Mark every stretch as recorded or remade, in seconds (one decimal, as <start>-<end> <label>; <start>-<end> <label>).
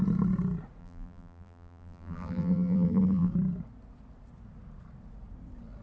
0.0-0.8 recorded; 0.8-3.3 remade; 3.3-5.8 recorded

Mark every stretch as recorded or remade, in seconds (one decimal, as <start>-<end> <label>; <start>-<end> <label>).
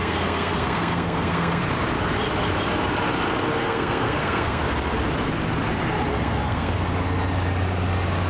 0.0-1.6 remade; 1.6-3.6 recorded; 3.6-4.6 remade; 4.6-6.1 recorded; 6.1-6.8 remade; 6.8-8.3 recorded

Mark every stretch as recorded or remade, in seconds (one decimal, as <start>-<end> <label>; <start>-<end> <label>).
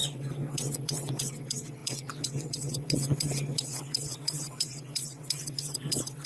0.0-6.3 remade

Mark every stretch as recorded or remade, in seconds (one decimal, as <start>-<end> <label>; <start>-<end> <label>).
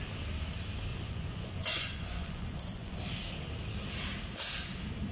0.0-0.9 recorded; 0.9-3.0 remade; 3.0-5.1 recorded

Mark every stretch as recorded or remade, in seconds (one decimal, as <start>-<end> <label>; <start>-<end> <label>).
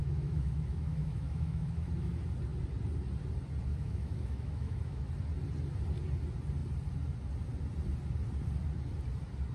0.0-2.1 remade; 2.1-3.7 recorded; 3.7-5.1 remade; 5.1-9.5 recorded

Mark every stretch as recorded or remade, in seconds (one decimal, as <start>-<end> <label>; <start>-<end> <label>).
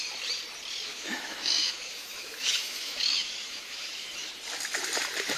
0.0-0.9 recorded; 0.9-3.9 remade; 3.9-5.4 recorded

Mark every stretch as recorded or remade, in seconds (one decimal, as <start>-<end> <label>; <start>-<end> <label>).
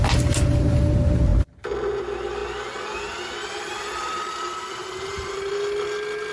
0.0-3.4 recorded; 3.4-5.5 remade; 5.5-6.3 recorded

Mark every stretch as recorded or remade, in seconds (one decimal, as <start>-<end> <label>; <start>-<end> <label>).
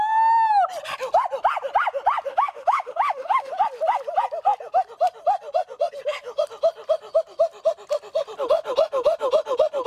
0.0-2.3 recorded; 2.3-3.5 remade; 3.5-9.9 recorded